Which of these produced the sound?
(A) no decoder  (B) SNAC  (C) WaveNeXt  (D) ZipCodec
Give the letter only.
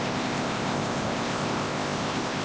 D